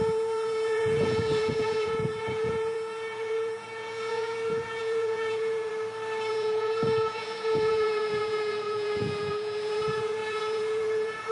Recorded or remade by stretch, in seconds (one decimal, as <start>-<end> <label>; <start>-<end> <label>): 0.0-5.7 remade; 5.7-6.3 recorded; 6.3-11.3 remade